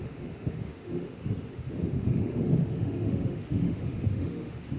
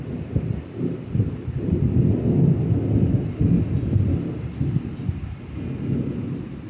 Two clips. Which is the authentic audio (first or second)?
second